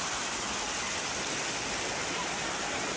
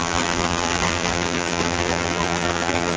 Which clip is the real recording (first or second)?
first